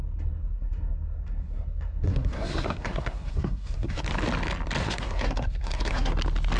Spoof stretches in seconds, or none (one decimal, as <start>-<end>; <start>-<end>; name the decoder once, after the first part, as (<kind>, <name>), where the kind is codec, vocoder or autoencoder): 0.0-4.0 (codec, SNAC); 4.8-6.1